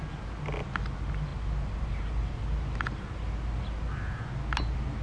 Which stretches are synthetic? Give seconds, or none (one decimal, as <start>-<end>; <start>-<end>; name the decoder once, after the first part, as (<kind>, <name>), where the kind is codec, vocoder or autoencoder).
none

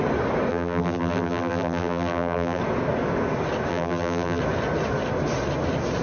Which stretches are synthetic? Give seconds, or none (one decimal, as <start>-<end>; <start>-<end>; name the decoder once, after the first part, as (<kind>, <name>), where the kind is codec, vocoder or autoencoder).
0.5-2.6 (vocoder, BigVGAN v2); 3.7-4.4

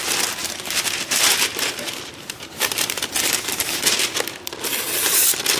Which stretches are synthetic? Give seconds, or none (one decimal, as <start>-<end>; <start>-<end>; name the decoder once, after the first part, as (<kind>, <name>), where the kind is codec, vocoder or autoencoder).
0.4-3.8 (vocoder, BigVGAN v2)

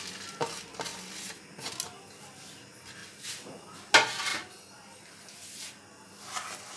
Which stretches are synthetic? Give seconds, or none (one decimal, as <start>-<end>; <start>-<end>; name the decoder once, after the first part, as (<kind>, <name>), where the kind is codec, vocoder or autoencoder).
none

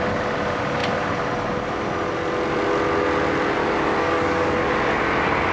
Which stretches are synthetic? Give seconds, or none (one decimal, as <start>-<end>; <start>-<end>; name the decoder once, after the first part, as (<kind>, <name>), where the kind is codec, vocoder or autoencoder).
3.6-4.7 (codec, DAC)

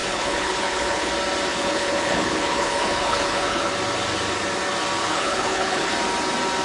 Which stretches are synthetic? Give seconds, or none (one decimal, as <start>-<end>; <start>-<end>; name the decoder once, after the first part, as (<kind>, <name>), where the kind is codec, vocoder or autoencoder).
0.0-1.1 (codec, HILCodec); 1.5-3.7; 5.0-5.9

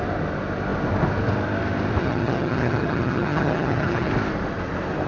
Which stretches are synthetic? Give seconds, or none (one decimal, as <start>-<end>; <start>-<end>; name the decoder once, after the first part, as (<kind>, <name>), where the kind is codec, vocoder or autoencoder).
2.0-4.1 (vocoder, HiFi-GAN)